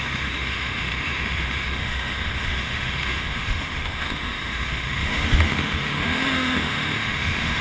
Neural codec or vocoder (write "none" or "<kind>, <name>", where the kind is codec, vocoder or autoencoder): autoencoder, DAC-VAE